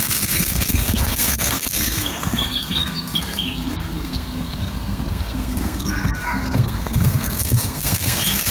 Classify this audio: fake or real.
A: fake